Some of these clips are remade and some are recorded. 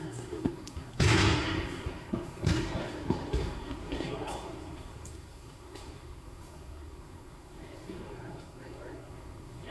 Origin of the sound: remade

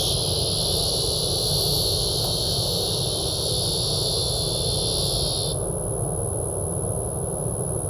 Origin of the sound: recorded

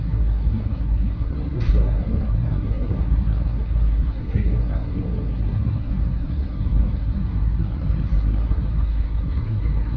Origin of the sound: remade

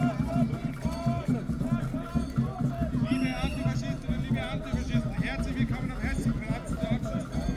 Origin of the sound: recorded